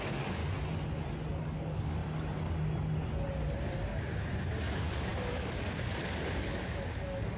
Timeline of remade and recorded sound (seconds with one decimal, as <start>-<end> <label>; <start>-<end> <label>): 0.0-0.4 remade; 0.4-1.3 recorded; 1.3-2.0 remade; 2.0-4.6 recorded; 4.6-7.4 remade